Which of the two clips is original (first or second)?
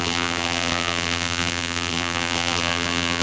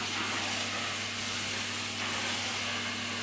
second